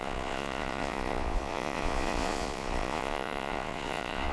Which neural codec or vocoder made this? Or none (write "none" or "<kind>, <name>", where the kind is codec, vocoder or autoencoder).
vocoder, Vocos